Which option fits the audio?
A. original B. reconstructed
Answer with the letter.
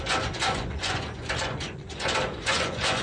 B